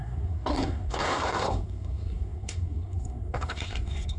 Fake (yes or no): yes